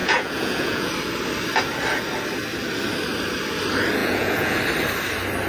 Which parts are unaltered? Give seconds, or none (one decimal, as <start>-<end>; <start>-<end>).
0.9-4.0; 4.6-5.5